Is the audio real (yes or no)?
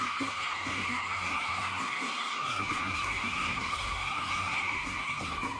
no